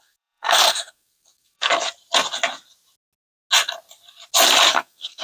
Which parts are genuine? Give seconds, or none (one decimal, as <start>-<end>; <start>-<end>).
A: 1.7-4.7